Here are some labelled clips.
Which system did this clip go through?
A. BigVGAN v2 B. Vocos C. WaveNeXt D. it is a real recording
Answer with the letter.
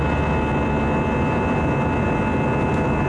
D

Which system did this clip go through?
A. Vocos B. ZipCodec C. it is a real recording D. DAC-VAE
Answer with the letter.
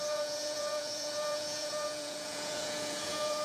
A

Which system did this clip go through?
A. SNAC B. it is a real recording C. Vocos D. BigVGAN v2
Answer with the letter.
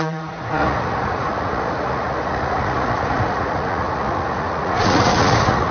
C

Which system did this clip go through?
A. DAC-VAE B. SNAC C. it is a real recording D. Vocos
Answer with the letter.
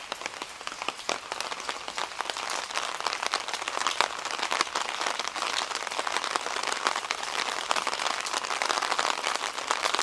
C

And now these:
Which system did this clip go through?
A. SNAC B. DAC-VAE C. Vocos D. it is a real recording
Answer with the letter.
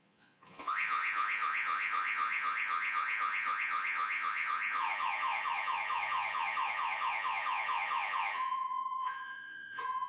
C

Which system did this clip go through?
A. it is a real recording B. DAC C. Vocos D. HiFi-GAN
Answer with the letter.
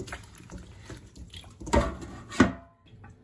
A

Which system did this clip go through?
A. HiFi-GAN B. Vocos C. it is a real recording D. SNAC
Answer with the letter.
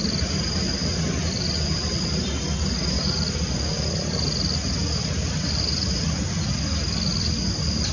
C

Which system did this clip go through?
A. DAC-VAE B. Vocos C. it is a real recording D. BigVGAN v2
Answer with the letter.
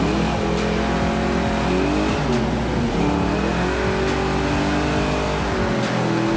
C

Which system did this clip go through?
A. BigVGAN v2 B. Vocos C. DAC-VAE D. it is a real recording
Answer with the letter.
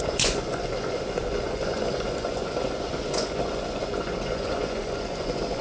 B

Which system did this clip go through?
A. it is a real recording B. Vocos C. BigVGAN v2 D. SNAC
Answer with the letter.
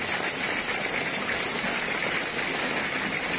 A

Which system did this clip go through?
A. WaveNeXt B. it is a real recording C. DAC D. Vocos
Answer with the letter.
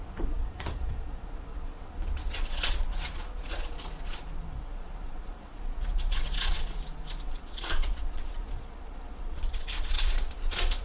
D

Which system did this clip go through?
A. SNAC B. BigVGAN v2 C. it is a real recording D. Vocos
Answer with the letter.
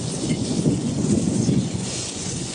D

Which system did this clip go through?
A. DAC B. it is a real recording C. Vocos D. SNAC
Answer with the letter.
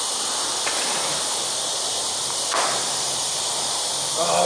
B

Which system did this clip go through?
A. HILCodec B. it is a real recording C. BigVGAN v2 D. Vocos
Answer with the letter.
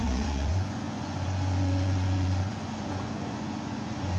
D